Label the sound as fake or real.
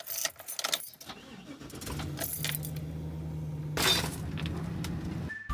real